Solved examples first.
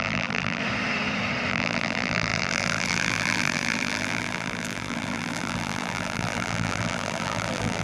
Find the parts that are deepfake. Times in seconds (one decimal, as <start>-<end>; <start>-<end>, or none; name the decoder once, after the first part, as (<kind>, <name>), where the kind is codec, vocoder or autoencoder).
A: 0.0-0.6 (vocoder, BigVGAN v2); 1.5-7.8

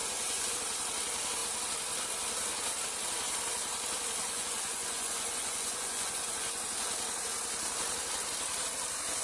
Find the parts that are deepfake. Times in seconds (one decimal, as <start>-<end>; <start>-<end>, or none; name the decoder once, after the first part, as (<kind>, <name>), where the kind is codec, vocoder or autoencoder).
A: 0.0-0.5 (vocoder, Vocos); 4.2-6.6

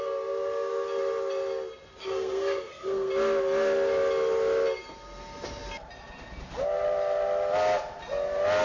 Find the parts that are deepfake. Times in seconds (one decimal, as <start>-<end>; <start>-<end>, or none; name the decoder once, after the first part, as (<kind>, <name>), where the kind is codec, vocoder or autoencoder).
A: 2.0-3.1 (codec, SNAC)